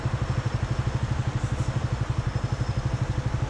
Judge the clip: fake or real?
real